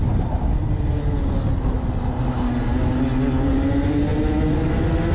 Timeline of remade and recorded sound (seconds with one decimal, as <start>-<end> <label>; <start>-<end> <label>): 0.0-5.1 recorded